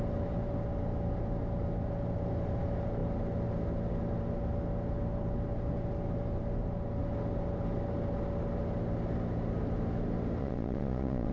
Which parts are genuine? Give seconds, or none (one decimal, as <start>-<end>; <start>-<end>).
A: 0.0-10.4